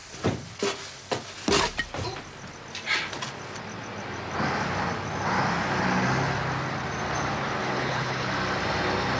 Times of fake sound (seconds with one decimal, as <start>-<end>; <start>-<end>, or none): 7.7-8.3

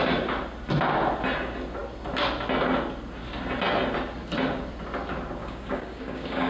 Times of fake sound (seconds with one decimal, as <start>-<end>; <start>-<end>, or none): 5.4-6.5

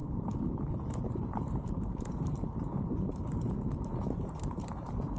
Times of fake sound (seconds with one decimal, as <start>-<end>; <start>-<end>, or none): 0.0-5.2

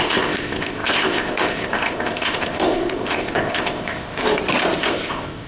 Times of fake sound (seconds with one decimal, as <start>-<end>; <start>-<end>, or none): 0.0-4.2; 4.8-5.5

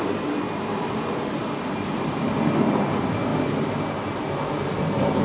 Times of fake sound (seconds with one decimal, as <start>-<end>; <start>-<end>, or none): none

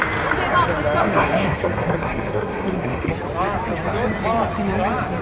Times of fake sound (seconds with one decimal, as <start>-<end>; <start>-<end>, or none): 1.0-3.1